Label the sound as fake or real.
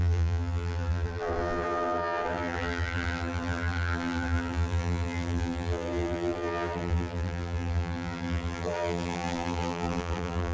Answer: fake